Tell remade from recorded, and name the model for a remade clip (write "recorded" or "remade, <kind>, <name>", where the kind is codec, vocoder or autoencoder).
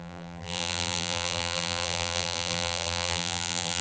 remade, vocoder, BigVGAN v2